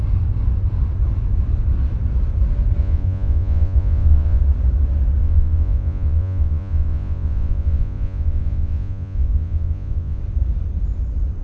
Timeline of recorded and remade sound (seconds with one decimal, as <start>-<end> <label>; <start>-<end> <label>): 0.0-2.8 recorded; 2.8-4.4 remade; 4.4-5.2 recorded; 5.2-10.2 remade; 10.2-11.4 recorded